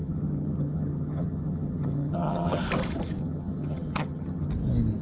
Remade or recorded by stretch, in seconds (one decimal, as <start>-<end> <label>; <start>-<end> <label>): 0.0-2.6 remade; 2.6-3.2 recorded; 3.2-4.5 remade; 4.5-5.0 recorded